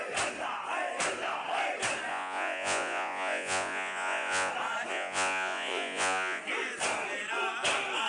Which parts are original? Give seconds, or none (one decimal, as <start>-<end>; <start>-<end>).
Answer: 0.0-2.1; 4.5-4.9; 6.4-8.1